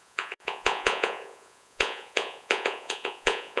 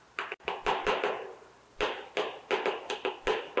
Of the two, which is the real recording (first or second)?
second